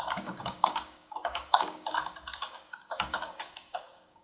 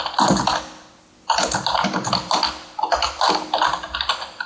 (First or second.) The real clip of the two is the second